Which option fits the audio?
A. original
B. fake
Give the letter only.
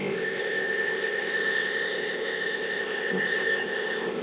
B